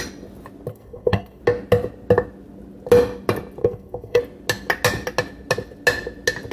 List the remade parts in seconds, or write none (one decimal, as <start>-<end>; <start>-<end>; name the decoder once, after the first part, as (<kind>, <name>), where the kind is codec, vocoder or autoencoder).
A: 0.7-1.4 (codec, SNAC); 3.6-4.2